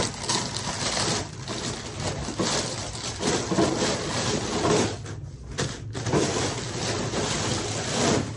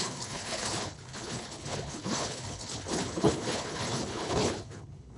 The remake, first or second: second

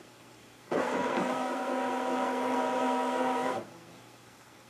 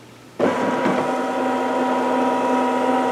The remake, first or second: first